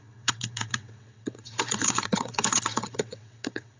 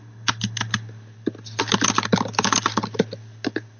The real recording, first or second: second